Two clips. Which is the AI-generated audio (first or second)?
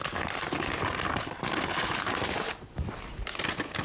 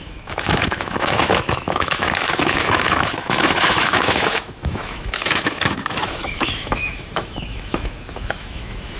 second